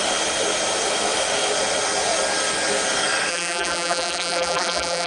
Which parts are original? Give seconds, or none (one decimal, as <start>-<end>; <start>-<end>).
0.0-3.3